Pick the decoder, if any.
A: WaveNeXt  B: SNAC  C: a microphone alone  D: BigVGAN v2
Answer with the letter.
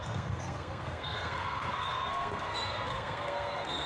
B